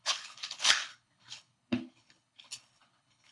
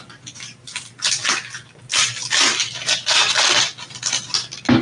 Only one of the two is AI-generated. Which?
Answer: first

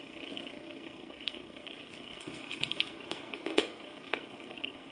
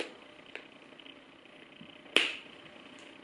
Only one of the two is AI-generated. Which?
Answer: first